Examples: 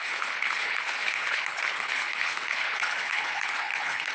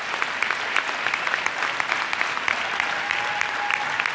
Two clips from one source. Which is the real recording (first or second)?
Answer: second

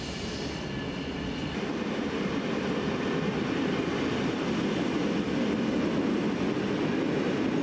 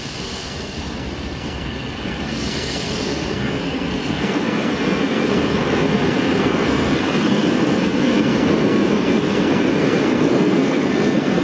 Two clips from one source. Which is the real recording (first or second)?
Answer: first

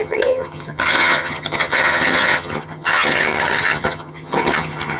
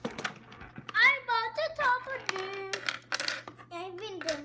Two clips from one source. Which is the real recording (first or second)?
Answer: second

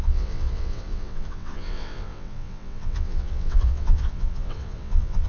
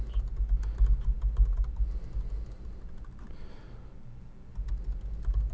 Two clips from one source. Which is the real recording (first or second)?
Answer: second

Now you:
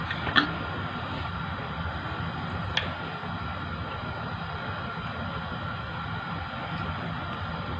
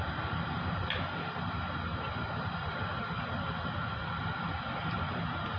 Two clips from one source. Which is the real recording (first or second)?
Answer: first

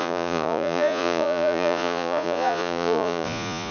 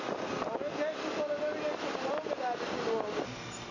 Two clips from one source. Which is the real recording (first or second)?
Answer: second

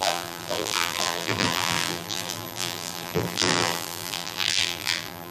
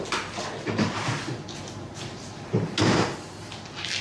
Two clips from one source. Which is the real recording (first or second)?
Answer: second